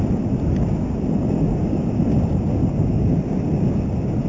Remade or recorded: recorded